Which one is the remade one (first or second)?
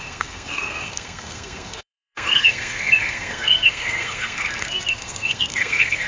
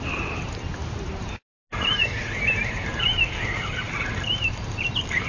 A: first